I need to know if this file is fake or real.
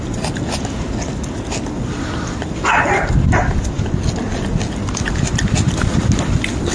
real